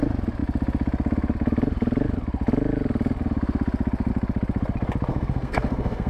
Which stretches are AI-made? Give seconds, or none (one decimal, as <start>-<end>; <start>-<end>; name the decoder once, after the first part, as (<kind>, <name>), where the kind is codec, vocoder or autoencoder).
5.1-6.1 (codec, SNAC)